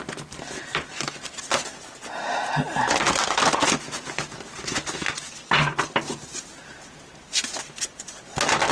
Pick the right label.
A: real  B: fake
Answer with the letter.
A